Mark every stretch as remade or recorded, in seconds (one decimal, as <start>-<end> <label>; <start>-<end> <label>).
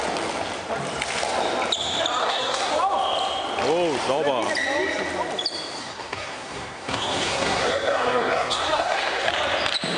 0.0-2.2 recorded; 2.2-2.7 remade; 2.7-5.8 recorded; 5.8-9.3 remade; 9.3-10.0 recorded